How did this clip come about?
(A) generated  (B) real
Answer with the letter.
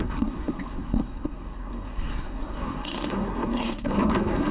A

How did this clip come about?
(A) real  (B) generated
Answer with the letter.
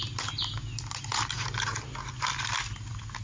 A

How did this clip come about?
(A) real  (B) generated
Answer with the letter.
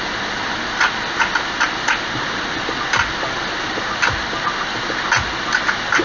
A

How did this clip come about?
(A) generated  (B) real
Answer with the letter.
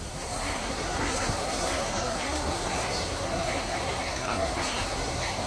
A